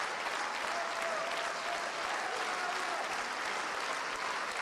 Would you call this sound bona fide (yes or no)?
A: yes